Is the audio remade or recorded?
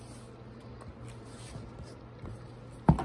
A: recorded